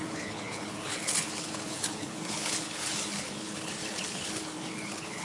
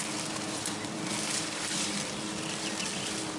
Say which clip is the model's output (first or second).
first